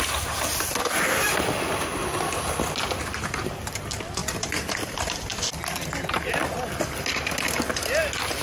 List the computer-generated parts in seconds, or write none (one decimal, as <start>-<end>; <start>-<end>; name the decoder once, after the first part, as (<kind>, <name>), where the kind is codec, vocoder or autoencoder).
none